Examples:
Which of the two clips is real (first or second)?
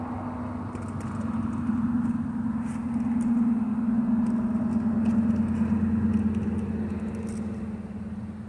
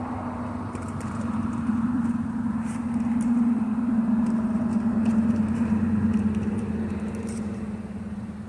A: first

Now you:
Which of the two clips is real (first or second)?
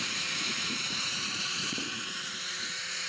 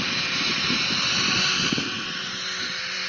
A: second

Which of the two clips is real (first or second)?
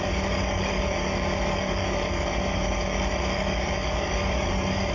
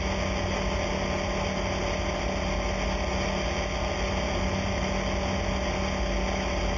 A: second